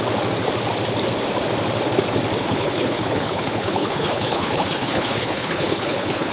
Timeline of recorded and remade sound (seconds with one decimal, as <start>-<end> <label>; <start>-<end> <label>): 0.0-2.4 recorded; 2.4-6.3 remade

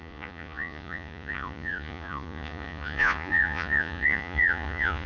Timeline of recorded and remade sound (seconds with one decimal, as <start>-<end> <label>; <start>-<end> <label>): 0.0-5.1 remade